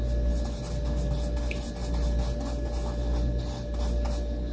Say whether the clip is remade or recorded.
recorded